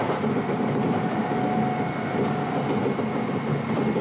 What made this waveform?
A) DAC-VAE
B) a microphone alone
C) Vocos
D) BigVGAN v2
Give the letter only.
B